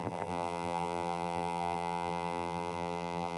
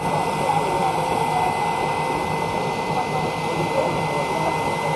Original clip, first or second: second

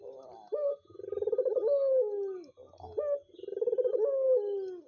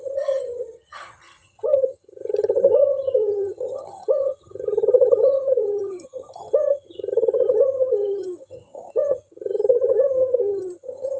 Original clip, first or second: first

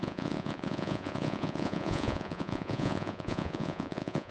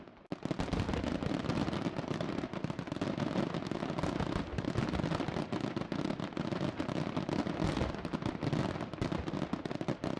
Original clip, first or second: second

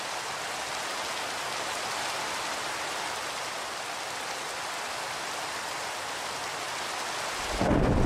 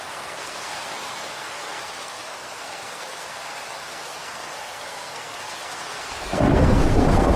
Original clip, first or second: first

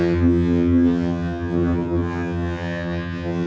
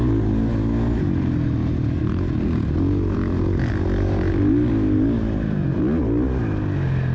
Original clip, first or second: second